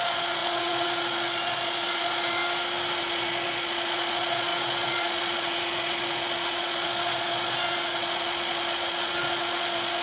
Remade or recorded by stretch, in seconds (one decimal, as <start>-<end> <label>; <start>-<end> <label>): 0.0-2.4 remade; 2.4-3.0 recorded; 3.0-10.0 remade